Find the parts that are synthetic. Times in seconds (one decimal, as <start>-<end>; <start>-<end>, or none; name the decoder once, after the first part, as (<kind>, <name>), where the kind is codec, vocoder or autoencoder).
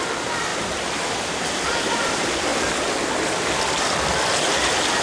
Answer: none